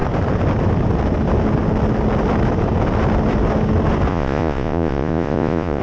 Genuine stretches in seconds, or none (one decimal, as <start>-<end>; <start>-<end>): 0.0-4.1